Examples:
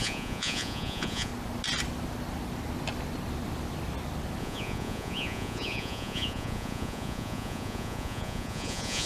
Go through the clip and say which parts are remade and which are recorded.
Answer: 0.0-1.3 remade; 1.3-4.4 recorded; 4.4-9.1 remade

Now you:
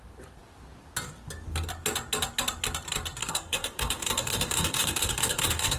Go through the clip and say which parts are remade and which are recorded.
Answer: 0.0-3.2 recorded; 3.2-5.8 remade